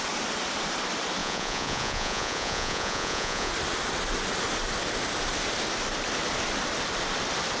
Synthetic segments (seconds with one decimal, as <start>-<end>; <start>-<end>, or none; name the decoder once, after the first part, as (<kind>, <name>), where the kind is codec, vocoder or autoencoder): 1.2-3.5 (vocoder, Vocos)